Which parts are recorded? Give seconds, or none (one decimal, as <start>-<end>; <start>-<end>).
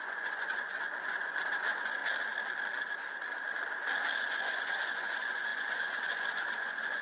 2.0-4.2